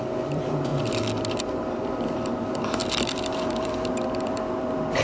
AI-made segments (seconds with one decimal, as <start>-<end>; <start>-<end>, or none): 0.0-0.7; 1.3-5.0